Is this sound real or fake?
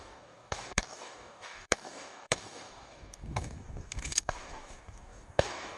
fake